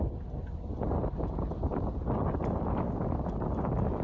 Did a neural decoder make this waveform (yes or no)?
no